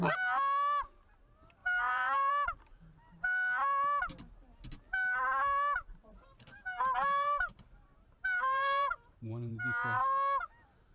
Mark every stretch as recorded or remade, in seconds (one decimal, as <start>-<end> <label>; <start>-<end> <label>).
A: 0.0-1.6 recorded; 1.6-2.3 remade; 2.3-6.0 recorded; 6.0-9.5 remade; 9.5-10.9 recorded